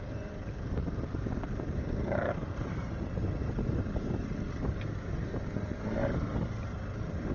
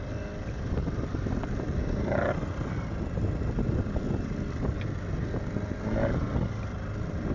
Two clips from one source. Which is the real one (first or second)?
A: second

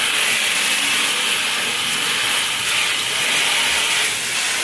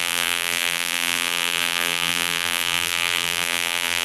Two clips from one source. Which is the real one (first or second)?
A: first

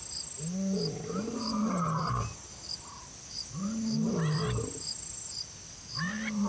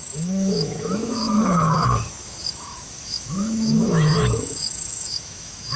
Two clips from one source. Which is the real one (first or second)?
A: first